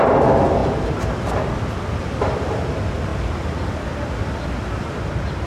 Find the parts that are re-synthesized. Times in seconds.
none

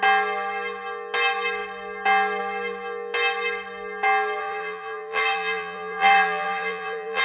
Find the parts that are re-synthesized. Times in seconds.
4.4-7.2 (vocoder, BigVGAN v2)

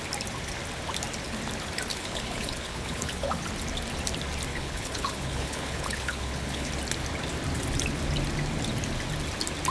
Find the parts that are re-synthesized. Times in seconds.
1.9-3.4 (codec, HILCodec); 4.5-6.7

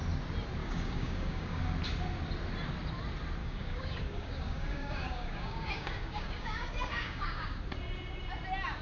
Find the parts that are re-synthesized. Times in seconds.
0.6-1.6 (codec, DAC); 3.4-7.6

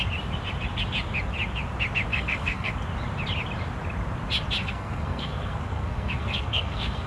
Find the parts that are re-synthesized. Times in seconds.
2.1-2.7 (codec, SNAC); 4.6-7.1

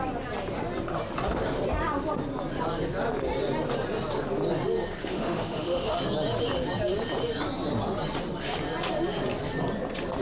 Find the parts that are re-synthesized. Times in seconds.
5.0-6.0 (autoencoder, DAC-VAE)

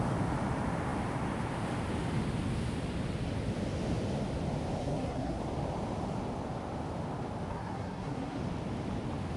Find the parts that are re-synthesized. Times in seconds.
4.8-5.4 (codec, SNAC); 7.5-8.4